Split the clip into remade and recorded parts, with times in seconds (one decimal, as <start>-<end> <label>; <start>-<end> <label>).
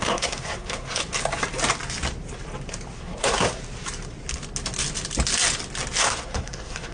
0.0-1.0 remade; 1.0-3.0 recorded; 3.0-3.6 remade; 3.6-6.0 recorded; 6.0-6.9 remade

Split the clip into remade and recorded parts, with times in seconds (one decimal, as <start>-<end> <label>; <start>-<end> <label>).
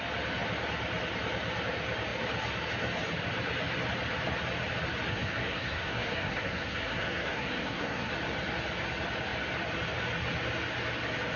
0.0-5.1 recorded; 5.1-8.1 remade; 8.1-11.4 recorded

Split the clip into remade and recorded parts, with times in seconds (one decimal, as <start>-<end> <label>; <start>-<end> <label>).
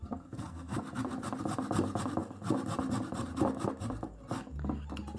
0.0-0.8 remade; 0.8-5.2 recorded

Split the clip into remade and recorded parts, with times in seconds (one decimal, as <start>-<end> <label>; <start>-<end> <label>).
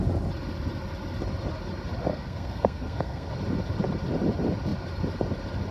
0.0-2.1 recorded; 2.1-3.3 remade; 3.3-5.7 recorded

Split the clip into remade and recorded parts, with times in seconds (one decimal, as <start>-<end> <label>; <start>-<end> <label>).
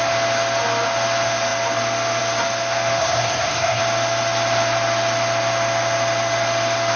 0.0-3.0 recorded; 3.0-3.8 remade; 3.8-7.0 recorded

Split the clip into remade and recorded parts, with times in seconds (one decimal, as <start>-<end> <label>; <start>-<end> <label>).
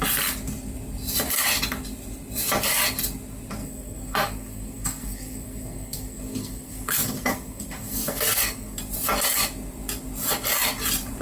0.0-3.6 recorded; 3.6-8.8 remade; 8.8-11.2 recorded